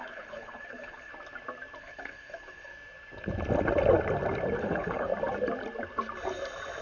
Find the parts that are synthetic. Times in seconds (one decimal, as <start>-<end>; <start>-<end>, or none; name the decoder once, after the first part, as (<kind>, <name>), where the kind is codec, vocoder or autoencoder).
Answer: 0.0-1.1 (codec, HILCodec); 1.8-2.7; 4.6-5.1